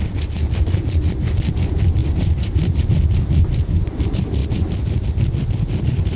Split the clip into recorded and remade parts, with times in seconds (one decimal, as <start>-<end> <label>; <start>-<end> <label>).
0.0-2.0 recorded; 2.0-2.8 remade; 2.8-6.2 recorded